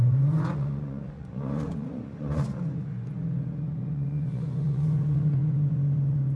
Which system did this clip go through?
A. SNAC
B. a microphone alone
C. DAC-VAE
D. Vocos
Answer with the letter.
D